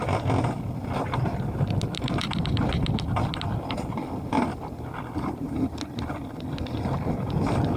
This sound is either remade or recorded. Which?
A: recorded